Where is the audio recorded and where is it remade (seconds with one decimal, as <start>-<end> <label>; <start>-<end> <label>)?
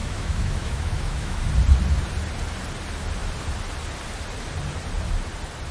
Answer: 0.0-1.4 remade; 1.4-5.7 recorded